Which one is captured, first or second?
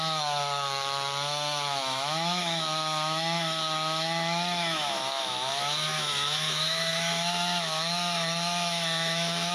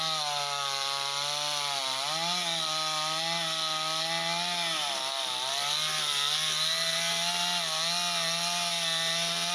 second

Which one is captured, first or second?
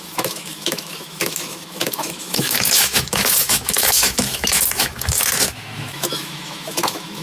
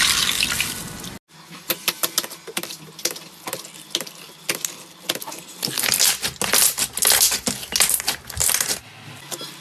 second